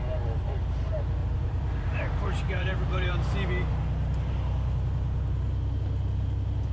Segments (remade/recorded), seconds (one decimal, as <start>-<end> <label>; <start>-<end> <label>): 0.0-1.2 recorded; 1.2-3.2 remade; 3.2-6.7 recorded